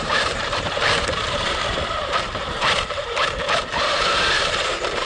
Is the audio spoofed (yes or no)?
yes